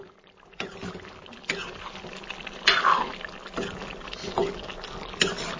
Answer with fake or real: real